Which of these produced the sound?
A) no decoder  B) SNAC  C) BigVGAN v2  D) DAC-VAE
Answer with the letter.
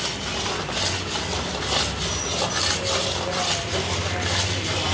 C